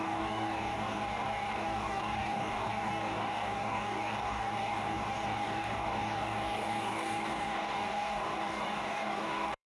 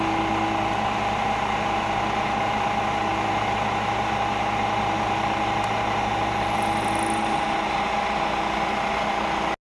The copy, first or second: first